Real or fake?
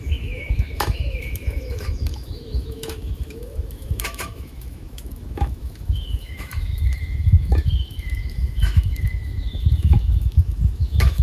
fake